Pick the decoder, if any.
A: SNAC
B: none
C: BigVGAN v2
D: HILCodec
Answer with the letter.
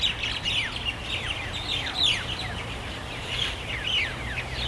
B